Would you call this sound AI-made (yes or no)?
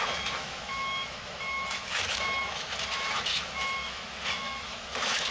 yes